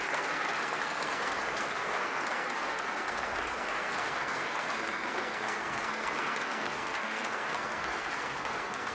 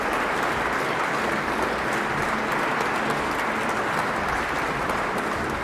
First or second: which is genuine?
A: second